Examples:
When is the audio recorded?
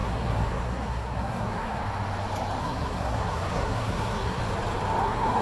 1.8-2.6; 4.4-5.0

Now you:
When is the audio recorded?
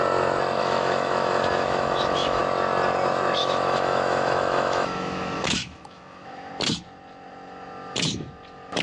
0.0-0.6; 2.4-3.4; 6.5-8.8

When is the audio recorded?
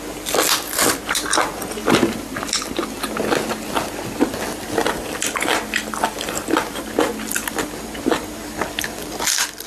0.0-4.8; 7.1-9.7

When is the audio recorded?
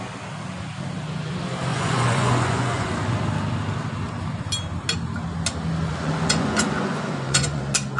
0.0-1.7; 2.9-5.9; 7.6-8.0